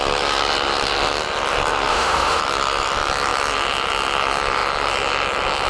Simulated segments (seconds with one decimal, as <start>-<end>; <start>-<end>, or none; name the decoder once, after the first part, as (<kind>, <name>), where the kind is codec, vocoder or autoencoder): 1.9-2.4 (autoencoder, DAC-VAE)

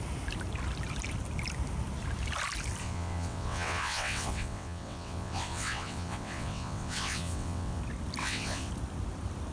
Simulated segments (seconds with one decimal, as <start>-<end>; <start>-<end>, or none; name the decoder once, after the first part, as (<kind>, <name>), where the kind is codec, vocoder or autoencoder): 2.8-7.8 (vocoder, WaveNeXt); 8.2-8.7

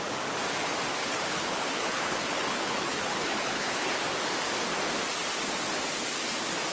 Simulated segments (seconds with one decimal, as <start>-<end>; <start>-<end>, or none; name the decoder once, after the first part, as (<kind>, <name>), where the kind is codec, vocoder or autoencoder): 1.0-4.0 (codec, HILCodec)